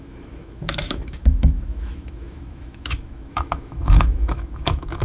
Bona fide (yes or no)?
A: no